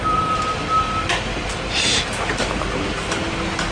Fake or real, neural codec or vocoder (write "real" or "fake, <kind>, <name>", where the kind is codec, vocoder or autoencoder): real